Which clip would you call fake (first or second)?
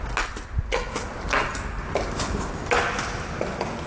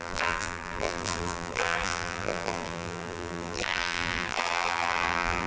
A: second